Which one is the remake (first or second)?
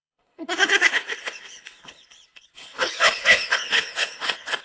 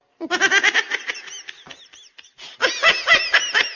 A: first